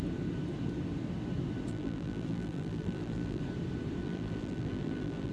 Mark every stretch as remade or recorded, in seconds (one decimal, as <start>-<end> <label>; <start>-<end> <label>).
0.0-1.7 recorded; 1.7-3.4 remade; 3.4-4.0 recorded; 4.0-5.3 remade